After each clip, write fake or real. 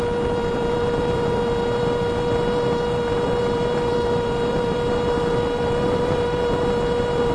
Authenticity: fake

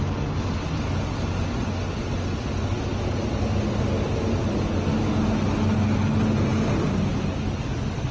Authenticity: real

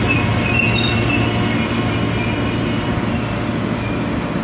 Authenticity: real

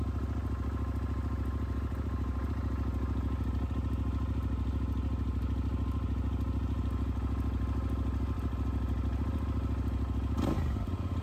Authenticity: real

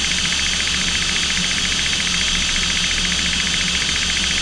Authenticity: real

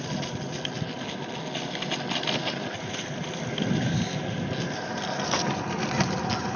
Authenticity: real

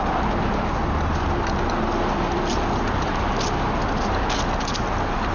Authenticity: real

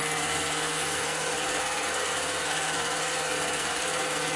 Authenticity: fake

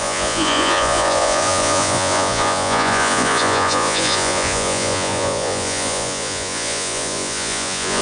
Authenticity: fake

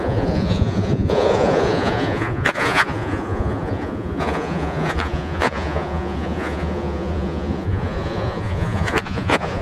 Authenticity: fake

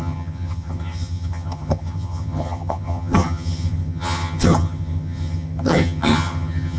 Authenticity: fake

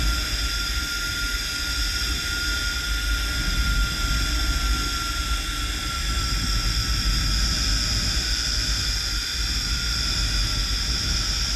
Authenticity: real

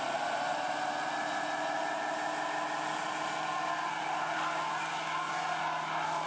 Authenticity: real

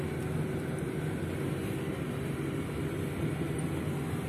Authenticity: real